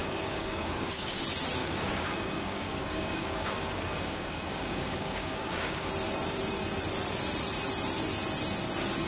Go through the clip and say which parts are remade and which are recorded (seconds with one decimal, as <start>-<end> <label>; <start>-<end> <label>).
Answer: 0.0-1.2 remade; 1.2-1.6 recorded; 1.6-5.9 remade; 5.9-9.1 recorded